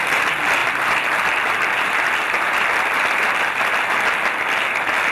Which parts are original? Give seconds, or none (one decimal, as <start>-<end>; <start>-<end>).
0.0-0.6; 3.7-5.1